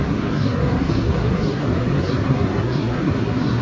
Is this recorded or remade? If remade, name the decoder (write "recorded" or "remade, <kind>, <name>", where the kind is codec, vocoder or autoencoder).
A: remade, codec, SNAC